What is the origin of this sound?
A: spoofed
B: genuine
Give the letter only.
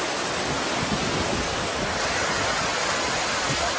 B